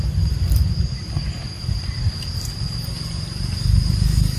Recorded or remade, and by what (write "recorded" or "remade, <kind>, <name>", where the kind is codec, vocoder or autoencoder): remade, vocoder, BigVGAN v2